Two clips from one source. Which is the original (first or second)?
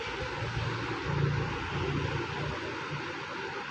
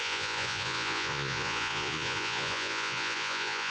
first